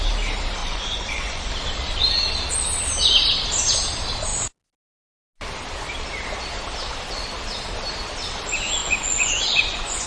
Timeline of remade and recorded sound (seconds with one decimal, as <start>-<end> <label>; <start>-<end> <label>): 0.0-0.6 recorded; 0.6-1.5 remade; 1.5-8.8 recorded; 8.8-10.1 remade